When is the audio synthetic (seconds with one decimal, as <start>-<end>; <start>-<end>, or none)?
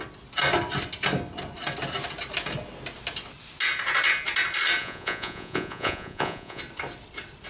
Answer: 4.8-6.6